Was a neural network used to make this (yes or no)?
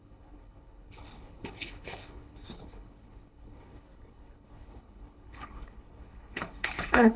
yes